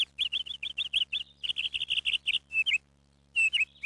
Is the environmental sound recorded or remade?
recorded